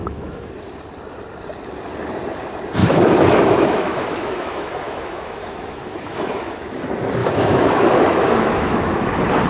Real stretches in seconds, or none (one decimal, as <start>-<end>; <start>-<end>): 0.5-2.8; 6.8-7.2; 9.1-9.5